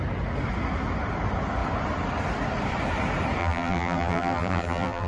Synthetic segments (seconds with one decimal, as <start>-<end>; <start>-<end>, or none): 3.4-5.1